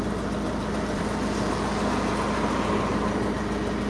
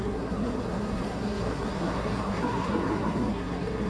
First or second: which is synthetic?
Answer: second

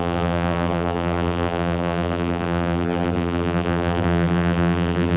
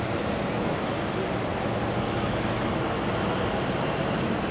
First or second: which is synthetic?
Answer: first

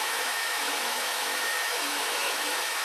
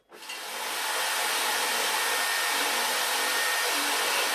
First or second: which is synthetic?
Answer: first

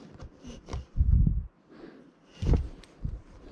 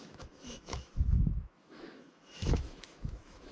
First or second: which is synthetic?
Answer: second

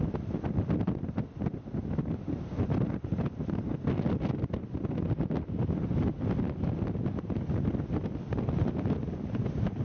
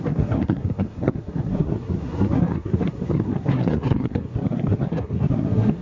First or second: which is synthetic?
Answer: second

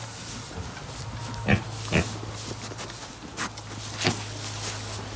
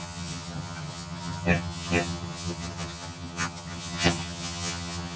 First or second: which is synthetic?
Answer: second